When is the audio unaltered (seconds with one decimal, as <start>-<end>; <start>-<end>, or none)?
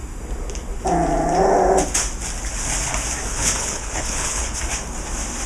0.0-3.3; 4.6-5.5